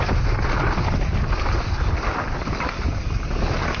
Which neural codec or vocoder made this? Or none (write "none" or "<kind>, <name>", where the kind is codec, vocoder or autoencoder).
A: none